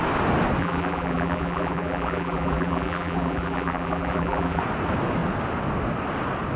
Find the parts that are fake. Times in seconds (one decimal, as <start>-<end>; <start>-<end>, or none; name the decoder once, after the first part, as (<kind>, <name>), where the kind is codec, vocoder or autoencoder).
0.6-4.6 (vocoder, BigVGAN v2)